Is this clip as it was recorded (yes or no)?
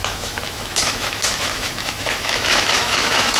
no